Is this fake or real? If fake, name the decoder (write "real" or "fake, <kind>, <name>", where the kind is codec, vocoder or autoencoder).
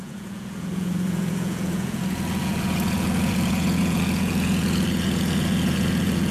fake, vocoder, Vocos